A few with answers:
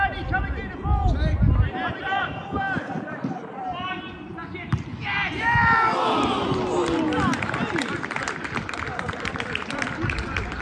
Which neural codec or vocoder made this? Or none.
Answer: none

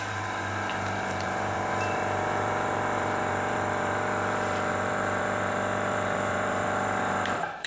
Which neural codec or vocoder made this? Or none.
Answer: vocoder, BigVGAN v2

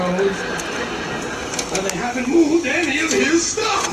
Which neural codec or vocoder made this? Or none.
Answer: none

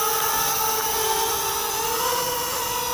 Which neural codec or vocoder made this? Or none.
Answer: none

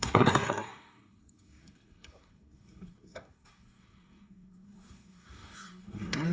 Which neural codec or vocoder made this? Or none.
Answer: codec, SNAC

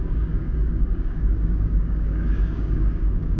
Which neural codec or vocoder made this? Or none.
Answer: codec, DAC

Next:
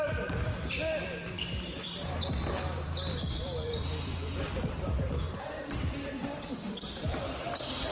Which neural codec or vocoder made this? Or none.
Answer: vocoder, BigVGAN v2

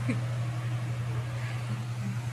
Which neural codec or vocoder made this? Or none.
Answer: none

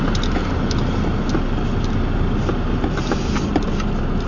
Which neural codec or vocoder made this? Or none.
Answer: none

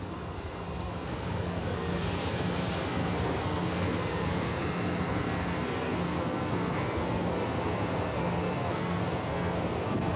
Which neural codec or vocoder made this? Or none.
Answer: codec, SNAC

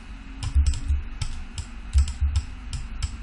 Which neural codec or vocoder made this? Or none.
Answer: none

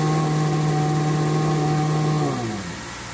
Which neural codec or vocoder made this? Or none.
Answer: none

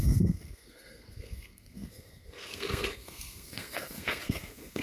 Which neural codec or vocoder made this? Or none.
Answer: codec, SNAC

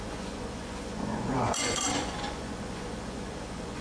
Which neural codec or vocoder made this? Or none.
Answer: vocoder, Vocos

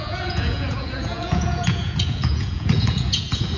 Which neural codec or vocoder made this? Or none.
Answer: vocoder, Vocos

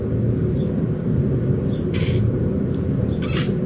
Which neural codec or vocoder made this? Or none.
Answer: none